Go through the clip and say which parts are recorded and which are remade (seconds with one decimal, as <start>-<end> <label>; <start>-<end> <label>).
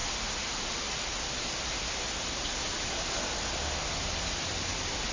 0.0-5.1 recorded